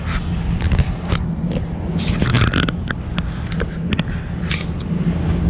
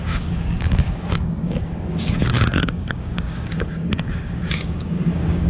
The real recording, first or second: first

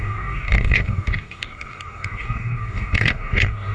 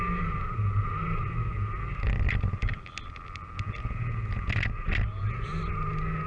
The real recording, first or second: second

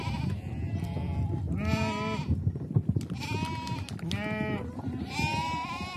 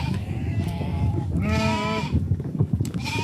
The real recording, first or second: first